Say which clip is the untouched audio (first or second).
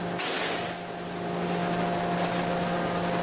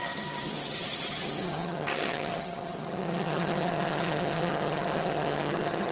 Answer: first